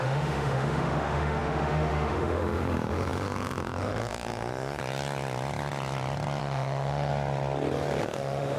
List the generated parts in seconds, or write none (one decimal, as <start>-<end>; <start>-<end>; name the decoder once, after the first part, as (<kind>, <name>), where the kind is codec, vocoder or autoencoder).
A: 0.0-4.8 (autoencoder, DAC-VAE); 6.4-7.1; 8.0-8.6